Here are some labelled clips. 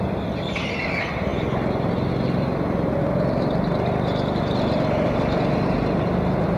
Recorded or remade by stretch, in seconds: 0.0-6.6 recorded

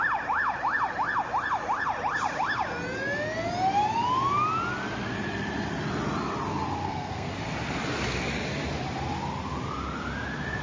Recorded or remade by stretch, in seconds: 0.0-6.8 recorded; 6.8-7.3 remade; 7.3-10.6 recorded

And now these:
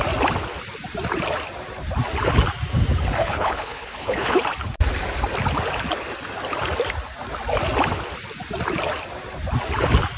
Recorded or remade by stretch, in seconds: 0.0-3.2 recorded; 3.2-4.4 remade; 4.4-10.2 recorded

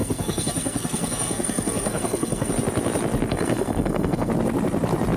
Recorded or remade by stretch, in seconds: 0.0-2.5 remade; 2.5-3.3 recorded; 3.3-4.3 remade; 4.3-5.2 recorded

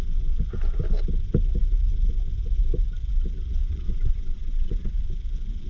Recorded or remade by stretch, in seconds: 0.0-3.6 recorded; 3.6-5.0 remade; 5.0-5.7 recorded

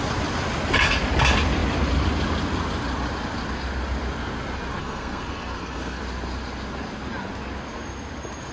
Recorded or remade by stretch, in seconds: 0.0-4.8 recorded; 4.8-6.0 remade; 6.0-8.5 recorded

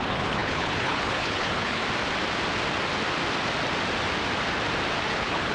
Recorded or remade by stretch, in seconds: 0.0-1.8 remade; 1.8-5.1 recorded; 5.1-5.5 remade